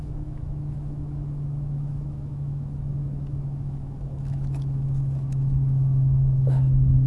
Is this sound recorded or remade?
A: remade